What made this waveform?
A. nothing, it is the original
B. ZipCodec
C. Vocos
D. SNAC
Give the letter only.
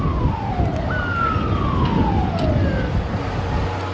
A